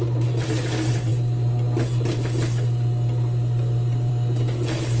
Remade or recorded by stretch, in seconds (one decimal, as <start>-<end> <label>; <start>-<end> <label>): 0.0-5.0 recorded